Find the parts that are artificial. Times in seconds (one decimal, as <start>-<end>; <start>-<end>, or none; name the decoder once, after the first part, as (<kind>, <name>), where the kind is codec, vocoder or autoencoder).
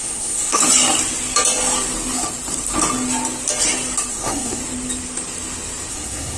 0.0-0.6 (codec, SNAC); 4.1-4.6; 5.9-6.4